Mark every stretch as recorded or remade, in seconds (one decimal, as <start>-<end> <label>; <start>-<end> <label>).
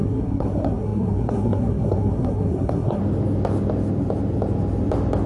0.0-3.0 remade; 3.0-5.3 recorded